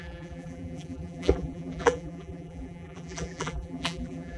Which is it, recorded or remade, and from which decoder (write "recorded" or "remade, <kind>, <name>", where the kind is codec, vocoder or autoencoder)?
remade, vocoder, BigVGAN v2